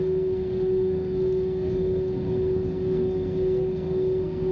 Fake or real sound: fake